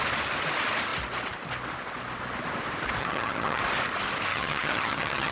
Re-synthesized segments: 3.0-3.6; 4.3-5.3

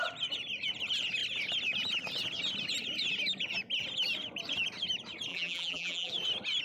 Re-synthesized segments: 5.3-6.1

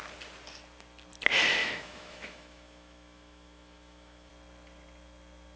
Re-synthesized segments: 1.6-4.3

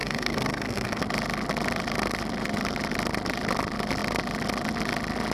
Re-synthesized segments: 0.0-1.0

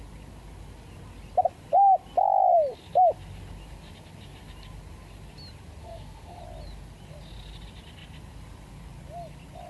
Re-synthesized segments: 5.8-6.4

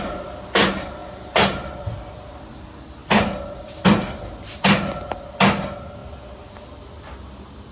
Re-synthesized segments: none